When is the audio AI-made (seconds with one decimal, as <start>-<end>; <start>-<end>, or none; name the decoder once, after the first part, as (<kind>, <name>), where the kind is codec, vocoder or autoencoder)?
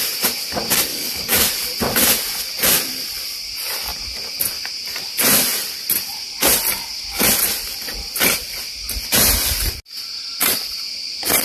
0.9-1.5 (codec, DAC)